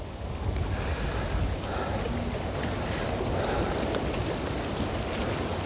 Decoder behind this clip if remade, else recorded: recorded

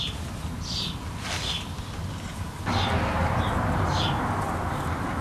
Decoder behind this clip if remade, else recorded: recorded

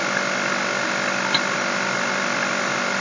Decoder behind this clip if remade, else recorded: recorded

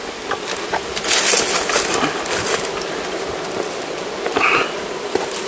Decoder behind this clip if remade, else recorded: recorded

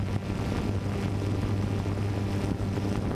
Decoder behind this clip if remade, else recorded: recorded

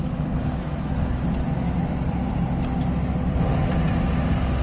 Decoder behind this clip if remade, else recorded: recorded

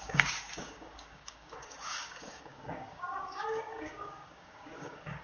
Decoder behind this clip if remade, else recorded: remade, codec, DAC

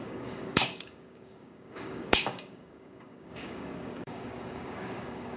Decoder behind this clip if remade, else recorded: remade, codec, DAC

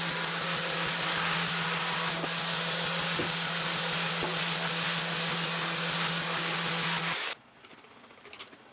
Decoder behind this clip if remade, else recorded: recorded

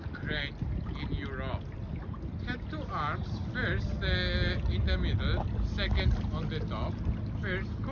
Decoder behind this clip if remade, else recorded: recorded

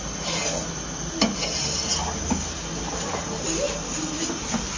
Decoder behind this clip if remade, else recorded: recorded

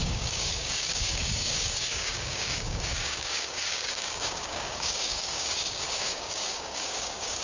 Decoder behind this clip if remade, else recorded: remade, codec, DAC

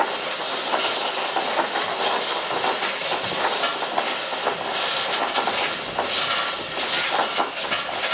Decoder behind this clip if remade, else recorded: recorded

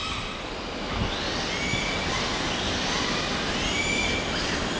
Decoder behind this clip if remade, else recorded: recorded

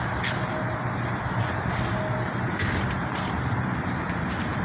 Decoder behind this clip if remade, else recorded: recorded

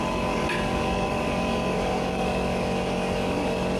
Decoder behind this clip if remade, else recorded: remade, codec, DAC